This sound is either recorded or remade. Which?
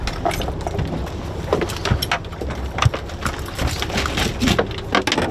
recorded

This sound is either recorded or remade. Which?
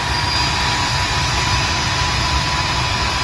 recorded